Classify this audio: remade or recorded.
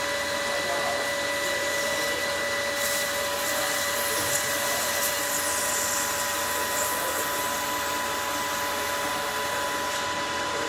recorded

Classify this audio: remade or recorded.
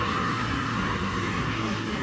remade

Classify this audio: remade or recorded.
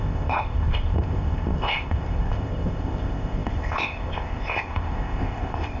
remade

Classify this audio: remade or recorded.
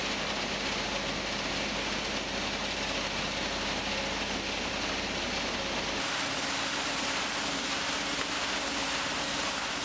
recorded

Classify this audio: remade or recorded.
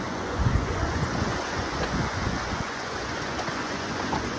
remade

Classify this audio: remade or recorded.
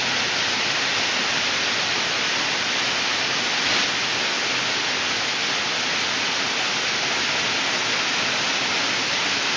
recorded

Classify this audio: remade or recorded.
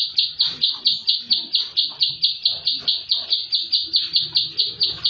recorded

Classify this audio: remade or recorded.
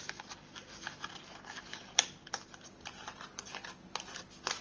recorded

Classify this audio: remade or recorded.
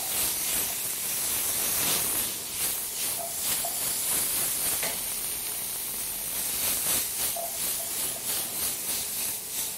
recorded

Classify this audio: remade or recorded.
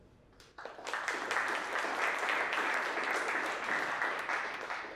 recorded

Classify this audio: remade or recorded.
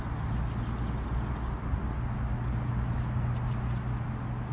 recorded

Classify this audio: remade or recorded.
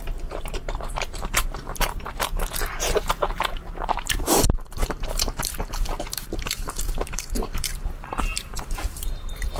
remade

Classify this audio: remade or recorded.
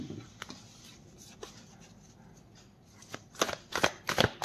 recorded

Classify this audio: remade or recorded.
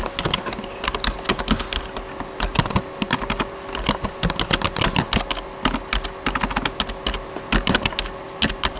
recorded